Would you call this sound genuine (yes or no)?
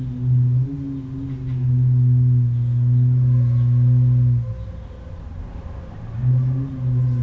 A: yes